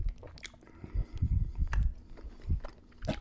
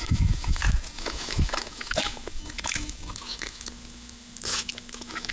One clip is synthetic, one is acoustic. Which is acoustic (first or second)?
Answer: first